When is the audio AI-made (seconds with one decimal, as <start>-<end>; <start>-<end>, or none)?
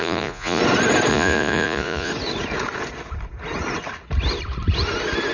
0.0-0.6; 1.1-2.1